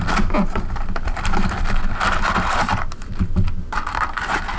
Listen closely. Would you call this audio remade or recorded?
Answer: recorded